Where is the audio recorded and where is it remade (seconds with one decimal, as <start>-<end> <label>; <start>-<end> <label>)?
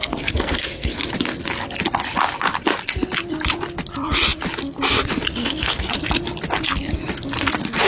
0.0-1.0 remade; 1.0-5.4 recorded; 5.4-5.9 remade; 5.9-7.9 recorded